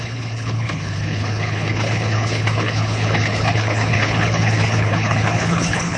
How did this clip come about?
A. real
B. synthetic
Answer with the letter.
B